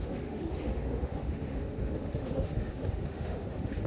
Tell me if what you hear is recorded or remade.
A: remade